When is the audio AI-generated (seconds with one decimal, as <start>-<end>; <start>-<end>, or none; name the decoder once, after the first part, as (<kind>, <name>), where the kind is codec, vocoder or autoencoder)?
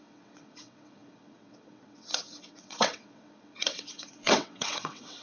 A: 0.0-5.2 (vocoder, WaveNeXt)